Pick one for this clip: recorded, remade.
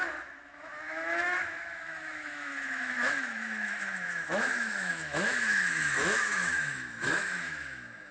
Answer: remade